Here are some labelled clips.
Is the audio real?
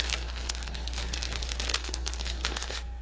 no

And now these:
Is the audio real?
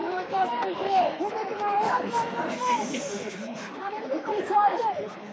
no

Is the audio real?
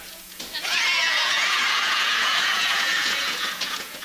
no